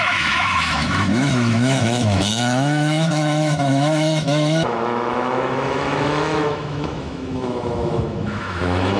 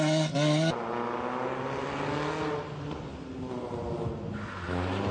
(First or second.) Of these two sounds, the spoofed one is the first